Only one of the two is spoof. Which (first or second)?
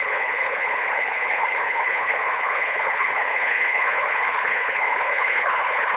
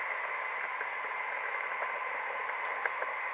first